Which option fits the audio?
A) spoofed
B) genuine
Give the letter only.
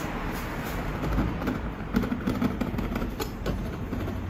A